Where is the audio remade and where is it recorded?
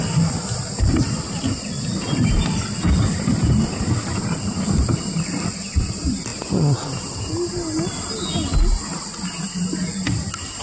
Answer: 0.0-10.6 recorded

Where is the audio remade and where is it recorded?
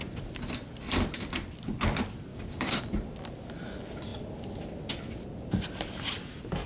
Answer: 0.0-2.3 recorded; 2.3-2.8 remade; 2.8-6.7 recorded